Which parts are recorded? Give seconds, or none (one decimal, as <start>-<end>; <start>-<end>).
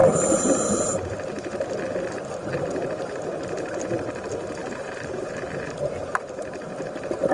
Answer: 1.1-4.6; 6.0-7.3